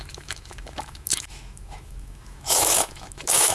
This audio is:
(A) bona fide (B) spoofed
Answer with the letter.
B